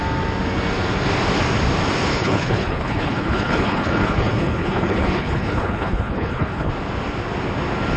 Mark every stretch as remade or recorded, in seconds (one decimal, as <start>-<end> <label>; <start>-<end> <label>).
0.0-2.1 recorded; 2.1-6.7 remade; 6.7-8.0 recorded